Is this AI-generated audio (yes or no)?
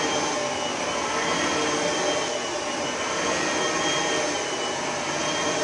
no